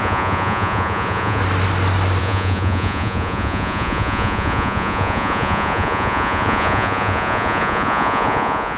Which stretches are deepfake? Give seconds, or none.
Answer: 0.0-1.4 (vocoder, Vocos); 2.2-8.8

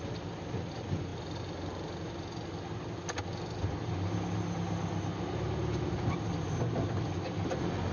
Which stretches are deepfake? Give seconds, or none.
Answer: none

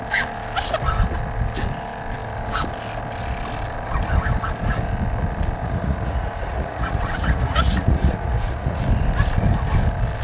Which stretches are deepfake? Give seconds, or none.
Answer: 5.6-8.8 (vocoder, Vocos)

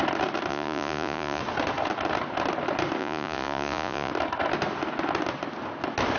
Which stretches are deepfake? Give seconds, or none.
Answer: 0.5-1.4 (vocoder, Vocos); 3.0-4.1

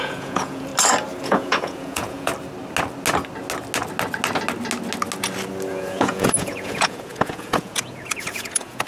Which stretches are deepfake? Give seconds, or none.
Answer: 0.0-0.7 (vocoder, Vocos); 1.2-2.3; 5.7-8.9

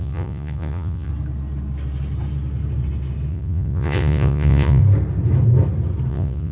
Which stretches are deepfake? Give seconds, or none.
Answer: 0.0-1.1 (vocoder, Vocos); 3.3-4.8; 6.1-6.5